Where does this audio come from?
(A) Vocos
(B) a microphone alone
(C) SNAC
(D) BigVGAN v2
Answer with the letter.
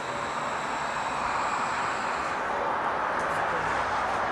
B